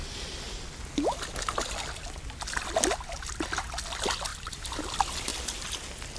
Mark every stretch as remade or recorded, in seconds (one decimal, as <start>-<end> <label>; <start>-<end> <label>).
0.0-6.2 recorded